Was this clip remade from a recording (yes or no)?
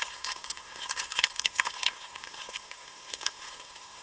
yes